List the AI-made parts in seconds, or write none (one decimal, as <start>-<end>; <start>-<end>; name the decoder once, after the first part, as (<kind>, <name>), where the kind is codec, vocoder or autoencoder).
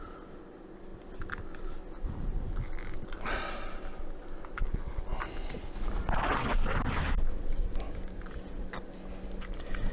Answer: none